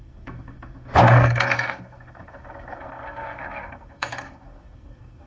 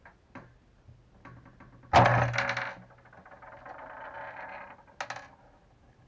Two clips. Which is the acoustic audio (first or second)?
second